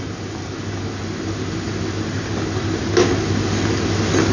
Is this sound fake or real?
real